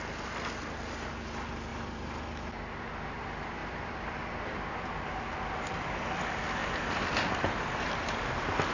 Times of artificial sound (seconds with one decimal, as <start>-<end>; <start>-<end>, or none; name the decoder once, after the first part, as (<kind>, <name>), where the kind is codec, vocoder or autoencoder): 1.7-2.2 (vocoder, BigVGAN v2); 3.6-4.3; 6.6-7.5